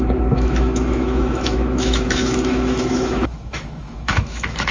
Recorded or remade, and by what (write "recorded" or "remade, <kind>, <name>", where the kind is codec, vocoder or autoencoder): remade, autoencoder, DAC-VAE